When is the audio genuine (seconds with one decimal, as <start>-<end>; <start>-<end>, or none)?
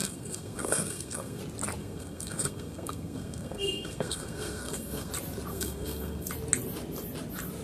1.4-1.8; 5.1-5.5; 6.3-7.6